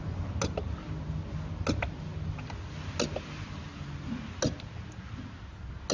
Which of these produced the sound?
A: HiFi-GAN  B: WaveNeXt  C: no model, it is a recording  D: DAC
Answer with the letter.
C